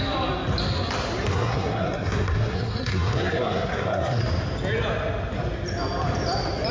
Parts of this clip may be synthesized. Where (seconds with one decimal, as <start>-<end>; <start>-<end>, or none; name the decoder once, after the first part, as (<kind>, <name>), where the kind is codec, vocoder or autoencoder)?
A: 1.3-4.2 (codec, SNAC)